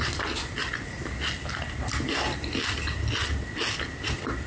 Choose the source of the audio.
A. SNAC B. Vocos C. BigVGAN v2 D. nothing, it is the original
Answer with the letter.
D